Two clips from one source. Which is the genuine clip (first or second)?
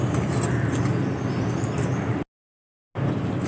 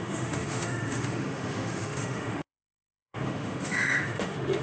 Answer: first